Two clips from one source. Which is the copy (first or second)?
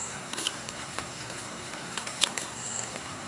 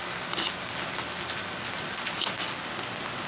first